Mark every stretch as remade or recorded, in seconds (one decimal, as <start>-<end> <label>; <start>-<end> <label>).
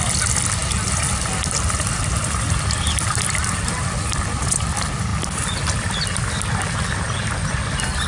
0.0-5.1 recorded; 5.1-6.4 remade; 6.4-8.1 recorded